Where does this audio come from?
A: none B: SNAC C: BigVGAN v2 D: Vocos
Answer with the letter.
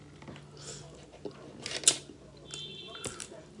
A